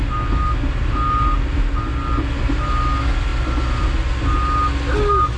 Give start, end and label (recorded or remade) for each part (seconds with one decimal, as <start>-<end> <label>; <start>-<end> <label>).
0.0-5.4 recorded